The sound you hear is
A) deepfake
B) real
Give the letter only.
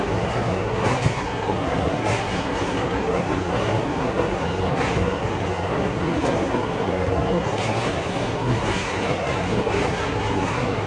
A